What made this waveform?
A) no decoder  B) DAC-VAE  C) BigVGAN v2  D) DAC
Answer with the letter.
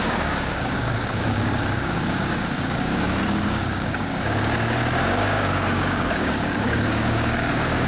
D